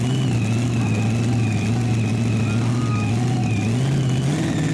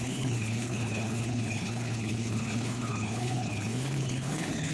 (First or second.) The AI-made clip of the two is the second